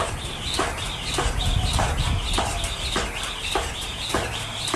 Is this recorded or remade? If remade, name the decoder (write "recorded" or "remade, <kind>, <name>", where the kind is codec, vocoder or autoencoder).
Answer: recorded